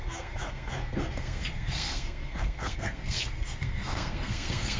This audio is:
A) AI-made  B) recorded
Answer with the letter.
A